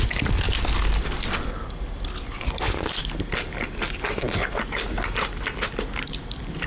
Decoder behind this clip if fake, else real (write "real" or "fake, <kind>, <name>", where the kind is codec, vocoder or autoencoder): real